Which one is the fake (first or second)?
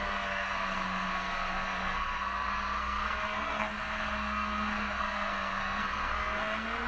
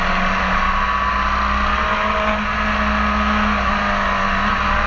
first